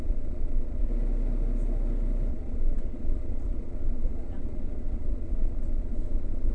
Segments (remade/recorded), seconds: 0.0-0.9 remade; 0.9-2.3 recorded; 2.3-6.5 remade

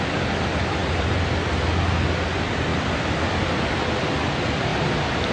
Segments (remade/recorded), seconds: 0.0-5.3 recorded

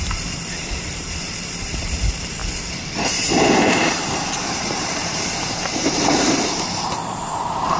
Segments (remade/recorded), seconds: 0.0-2.4 remade; 2.4-3.0 recorded; 3.0-7.8 remade

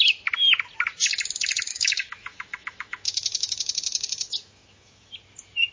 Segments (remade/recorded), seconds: 0.0-1.7 recorded; 1.7-5.1 remade; 5.1-5.7 recorded

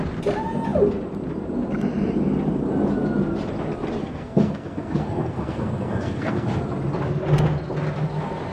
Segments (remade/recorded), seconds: 0.0-4.0 recorded; 4.0-6.5 remade; 6.5-8.5 recorded

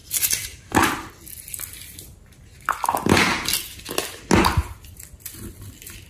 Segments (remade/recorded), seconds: 0.0-6.1 recorded

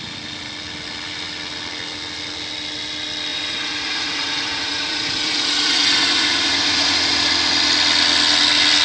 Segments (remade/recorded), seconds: 0.0-3.3 recorded; 3.3-7.3 remade; 7.3-8.8 recorded

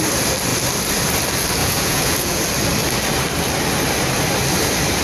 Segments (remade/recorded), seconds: 0.0-1.6 recorded; 1.6-2.4 remade; 2.4-5.0 recorded